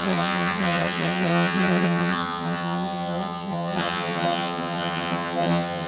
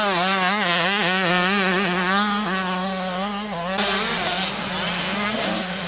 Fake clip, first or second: first